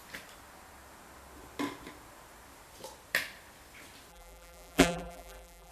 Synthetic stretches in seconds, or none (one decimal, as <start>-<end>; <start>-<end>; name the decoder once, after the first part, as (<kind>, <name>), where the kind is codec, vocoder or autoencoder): 4.1-5.7 (vocoder, BigVGAN v2)